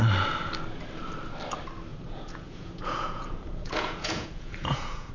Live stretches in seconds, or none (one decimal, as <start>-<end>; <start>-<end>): 0.0-1.9